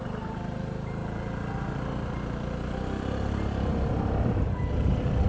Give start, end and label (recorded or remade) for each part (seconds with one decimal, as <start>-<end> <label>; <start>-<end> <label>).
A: 0.0-1.0 remade; 1.0-4.2 recorded; 4.2-5.3 remade